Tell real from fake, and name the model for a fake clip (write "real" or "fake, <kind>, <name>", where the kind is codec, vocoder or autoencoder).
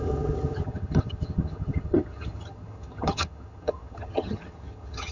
fake, vocoder, HiFi-GAN